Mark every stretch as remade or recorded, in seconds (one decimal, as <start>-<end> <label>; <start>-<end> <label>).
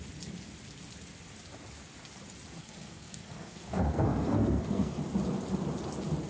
0.0-2.6 recorded; 2.6-5.0 remade; 5.0-6.3 recorded